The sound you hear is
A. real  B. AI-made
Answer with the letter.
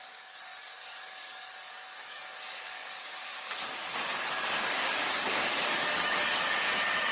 B